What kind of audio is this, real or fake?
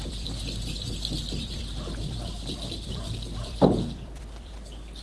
fake